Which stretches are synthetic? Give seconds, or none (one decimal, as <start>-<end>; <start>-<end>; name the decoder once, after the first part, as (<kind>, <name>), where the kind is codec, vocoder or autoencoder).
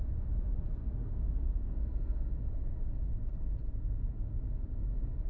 0.8-2.2 (codec, SNAC)